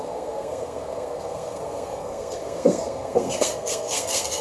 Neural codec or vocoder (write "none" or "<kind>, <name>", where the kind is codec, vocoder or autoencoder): codec, SNAC